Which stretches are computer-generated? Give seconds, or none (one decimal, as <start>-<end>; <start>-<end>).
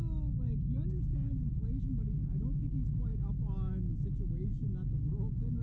0.0-1.1; 1.8-3.1; 3.9-5.6